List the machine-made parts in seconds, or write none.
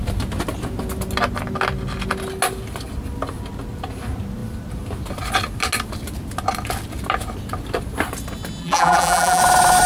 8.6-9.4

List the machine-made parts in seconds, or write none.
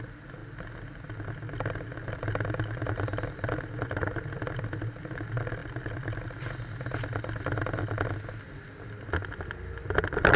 none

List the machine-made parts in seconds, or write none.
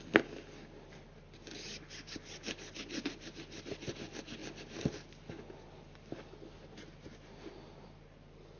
none